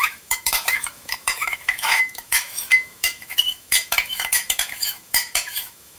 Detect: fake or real fake